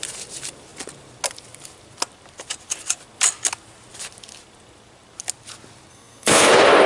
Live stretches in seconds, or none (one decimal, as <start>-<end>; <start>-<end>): 0.0-5.9; 6.5-6.9